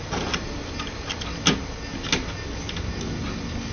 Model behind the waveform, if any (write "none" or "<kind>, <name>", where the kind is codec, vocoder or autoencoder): none